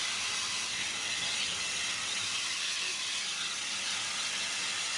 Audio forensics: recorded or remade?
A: recorded